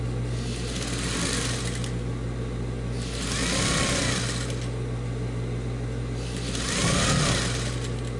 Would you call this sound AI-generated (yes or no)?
no